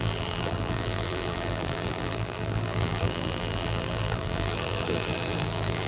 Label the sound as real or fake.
fake